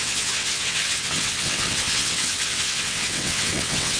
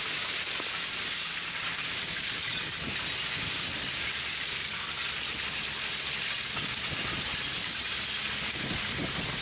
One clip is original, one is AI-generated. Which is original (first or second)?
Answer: second